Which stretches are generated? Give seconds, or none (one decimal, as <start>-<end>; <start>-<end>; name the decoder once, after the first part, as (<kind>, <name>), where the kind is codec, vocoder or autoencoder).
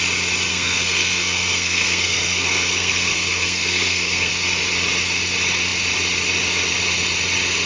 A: 0.5-4.3 (codec, SNAC)